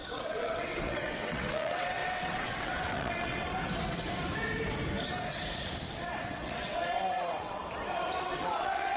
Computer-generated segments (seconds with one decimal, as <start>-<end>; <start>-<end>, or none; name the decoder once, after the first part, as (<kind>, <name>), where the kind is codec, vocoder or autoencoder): 0.0-3.5 (vocoder, WaveNeXt); 6.0-7.6; 8.2-9.0